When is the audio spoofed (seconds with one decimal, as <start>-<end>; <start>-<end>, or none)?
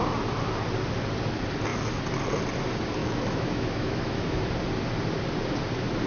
3.0-4.5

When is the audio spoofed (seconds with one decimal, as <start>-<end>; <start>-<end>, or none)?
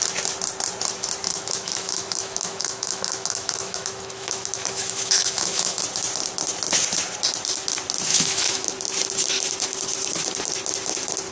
1.3-5.8; 8.1-8.7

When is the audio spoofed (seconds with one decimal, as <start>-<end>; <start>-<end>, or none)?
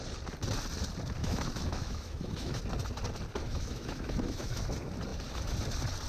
1.2-2.6; 3.4-4.6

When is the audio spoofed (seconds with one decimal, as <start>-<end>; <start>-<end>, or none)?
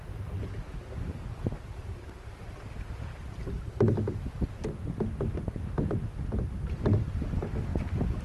none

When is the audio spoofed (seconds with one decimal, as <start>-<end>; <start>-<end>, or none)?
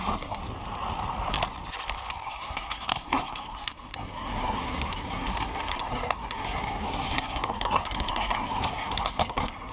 0.0-0.4; 2.1-9.7